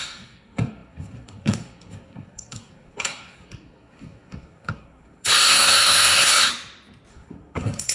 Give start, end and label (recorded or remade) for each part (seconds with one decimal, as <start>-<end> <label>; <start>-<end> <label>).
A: 0.0-6.5 remade; 6.5-7.1 recorded; 7.1-7.9 remade